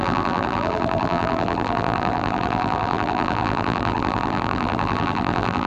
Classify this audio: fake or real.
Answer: fake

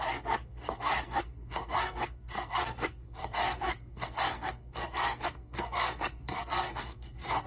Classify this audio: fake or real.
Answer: fake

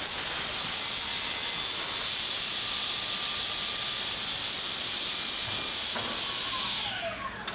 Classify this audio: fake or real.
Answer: real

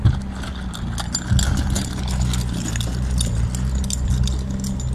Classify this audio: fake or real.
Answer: real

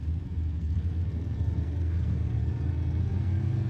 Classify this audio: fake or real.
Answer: fake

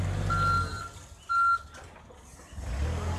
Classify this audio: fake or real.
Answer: real